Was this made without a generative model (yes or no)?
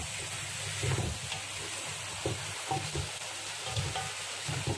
yes